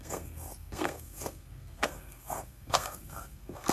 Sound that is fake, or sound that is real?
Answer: fake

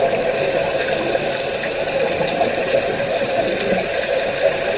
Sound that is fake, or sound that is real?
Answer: real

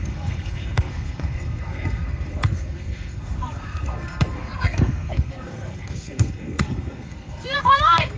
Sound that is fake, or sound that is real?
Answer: fake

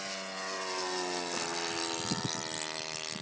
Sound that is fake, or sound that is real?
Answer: real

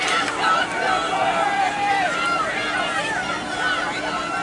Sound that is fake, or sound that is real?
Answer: real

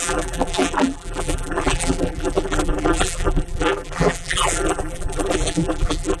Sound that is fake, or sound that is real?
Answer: fake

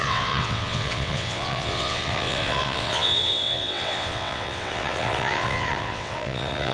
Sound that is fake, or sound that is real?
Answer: fake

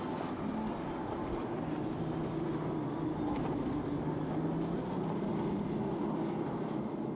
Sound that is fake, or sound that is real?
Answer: real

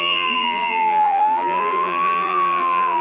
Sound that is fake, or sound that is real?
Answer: fake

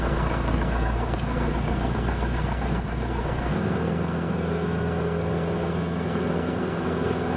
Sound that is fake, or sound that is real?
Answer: fake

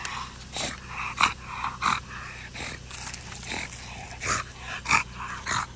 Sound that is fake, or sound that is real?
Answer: real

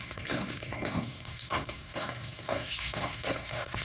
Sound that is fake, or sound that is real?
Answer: fake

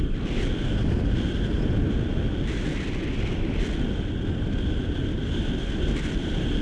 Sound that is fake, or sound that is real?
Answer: real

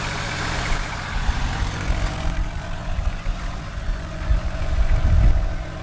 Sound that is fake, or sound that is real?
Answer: fake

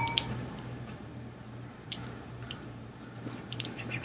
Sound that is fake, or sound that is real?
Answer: fake